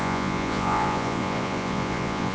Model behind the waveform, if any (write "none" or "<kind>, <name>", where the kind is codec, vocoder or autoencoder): vocoder, Vocos